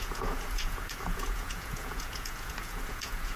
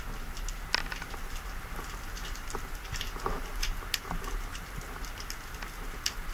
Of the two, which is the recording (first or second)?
second